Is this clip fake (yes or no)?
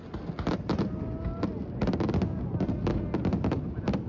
no